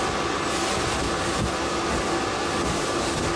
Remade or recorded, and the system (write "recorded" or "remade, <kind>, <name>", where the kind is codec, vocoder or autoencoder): recorded